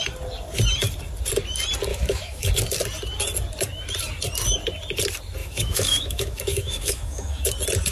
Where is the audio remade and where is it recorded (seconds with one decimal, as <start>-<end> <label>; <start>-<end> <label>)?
0.0-1.9 recorded; 1.9-2.5 remade; 2.5-5.4 recorded; 5.4-7.5 remade; 7.5-7.9 recorded